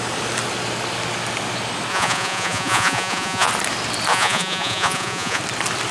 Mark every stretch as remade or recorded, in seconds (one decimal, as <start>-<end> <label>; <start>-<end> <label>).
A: 0.0-1.9 recorded; 1.9-3.5 remade; 3.5-4.1 recorded; 4.1-5.4 remade; 5.4-5.9 recorded

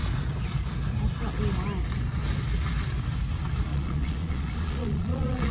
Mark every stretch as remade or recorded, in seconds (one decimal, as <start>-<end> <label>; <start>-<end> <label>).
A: 0.0-3.7 recorded; 3.7-5.5 remade